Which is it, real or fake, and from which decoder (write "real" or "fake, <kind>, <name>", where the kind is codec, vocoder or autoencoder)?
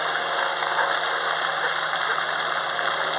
real